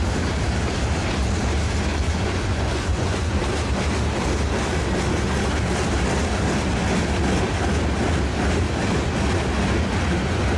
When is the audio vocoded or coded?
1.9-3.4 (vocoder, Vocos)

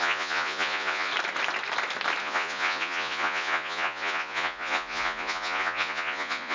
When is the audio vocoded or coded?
0.0-1.1 (vocoder, Vocos); 2.2-6.5